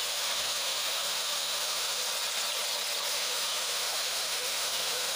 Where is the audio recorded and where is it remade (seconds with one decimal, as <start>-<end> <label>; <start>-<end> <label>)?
0.0-2.0 remade; 2.0-3.1 recorded; 3.1-5.2 remade